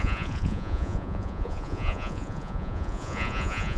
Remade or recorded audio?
remade